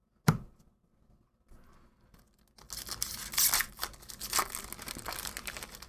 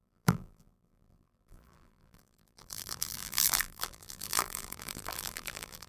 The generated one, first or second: second